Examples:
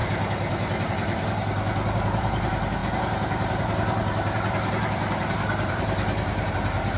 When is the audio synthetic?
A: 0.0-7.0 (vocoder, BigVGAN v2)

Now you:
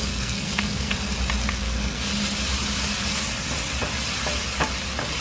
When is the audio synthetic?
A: 0.0-0.9 (codec, SNAC); 1.5-2.1

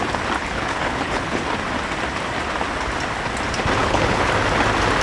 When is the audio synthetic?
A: 0.4-1.4 (codec, HILCodec); 3.8-4.3

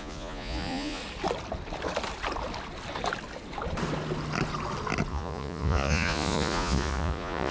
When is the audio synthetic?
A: 0.0-1.0 (vocoder, Vocos); 5.1-7.5

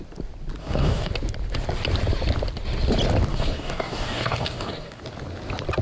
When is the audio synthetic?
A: 0.6-1.1 (codec, DAC); 3.3-5.0

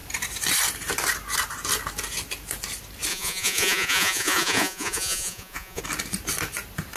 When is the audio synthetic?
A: 3.1-5.8 (vocoder, Vocos)